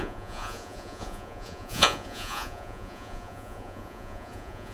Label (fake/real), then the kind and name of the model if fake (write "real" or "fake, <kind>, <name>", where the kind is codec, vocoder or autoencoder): fake, vocoder, Vocos